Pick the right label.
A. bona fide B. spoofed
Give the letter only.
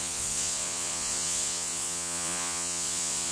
B